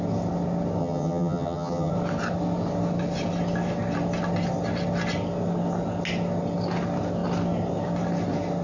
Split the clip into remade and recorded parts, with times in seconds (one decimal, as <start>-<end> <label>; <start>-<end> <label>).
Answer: 0.0-0.8 recorded; 0.8-1.9 remade; 1.9-8.6 recorded